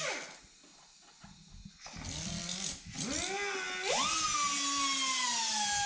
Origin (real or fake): real